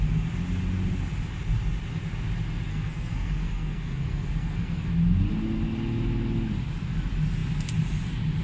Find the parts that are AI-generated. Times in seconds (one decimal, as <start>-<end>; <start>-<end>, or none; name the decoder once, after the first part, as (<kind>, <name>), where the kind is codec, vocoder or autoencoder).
2.7-4.9 (codec, SNAC)